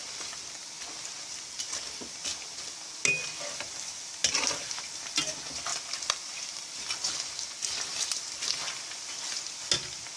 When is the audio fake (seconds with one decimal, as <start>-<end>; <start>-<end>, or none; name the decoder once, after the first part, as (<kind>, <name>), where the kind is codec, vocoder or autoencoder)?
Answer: none